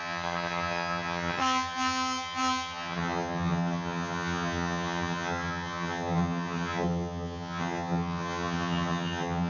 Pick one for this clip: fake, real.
fake